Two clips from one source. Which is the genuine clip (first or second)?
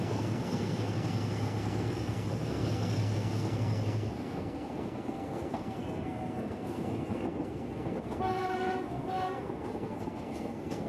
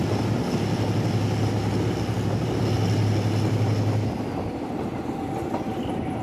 second